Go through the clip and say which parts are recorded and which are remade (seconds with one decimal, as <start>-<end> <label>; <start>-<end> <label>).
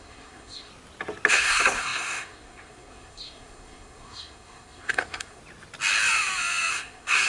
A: 0.0-0.7 remade; 0.7-1.3 recorded; 1.3-5.4 remade; 5.4-6.7 recorded; 6.7-7.3 remade